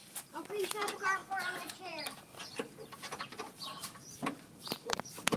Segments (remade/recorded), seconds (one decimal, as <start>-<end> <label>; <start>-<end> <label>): 0.0-0.7 recorded; 0.7-1.2 remade; 1.2-1.8 recorded; 1.8-2.3 remade; 2.3-3.2 recorded; 3.2-3.8 remade; 3.8-4.5 recorded; 4.5-5.4 remade